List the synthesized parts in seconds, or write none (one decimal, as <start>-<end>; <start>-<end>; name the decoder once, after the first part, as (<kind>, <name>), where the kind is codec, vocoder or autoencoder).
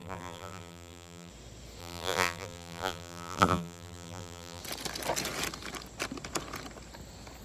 0.0-1.3 (vocoder, BigVGAN v2); 1.8-4.6